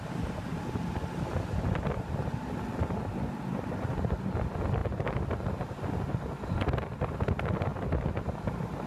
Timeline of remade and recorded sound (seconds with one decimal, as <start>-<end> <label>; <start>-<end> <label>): 0.0-8.9 recorded